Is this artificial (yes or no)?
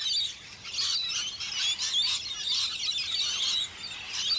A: no